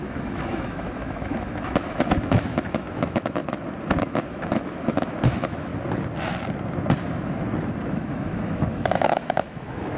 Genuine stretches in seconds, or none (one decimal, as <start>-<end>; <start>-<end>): 3.4-4.0; 5.7-7.9